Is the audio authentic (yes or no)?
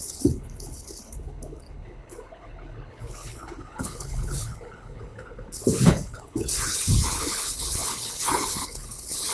no